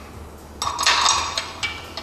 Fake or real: real